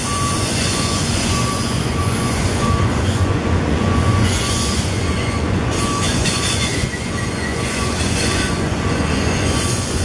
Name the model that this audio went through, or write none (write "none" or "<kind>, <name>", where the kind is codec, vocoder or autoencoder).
vocoder, Vocos